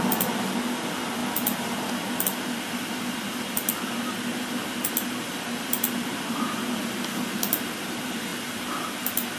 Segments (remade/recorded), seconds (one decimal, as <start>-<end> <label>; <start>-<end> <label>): 0.0-1.2 recorded; 1.2-1.9 remade; 1.9-8.3 recorded; 8.3-8.8 remade; 8.8-9.4 recorded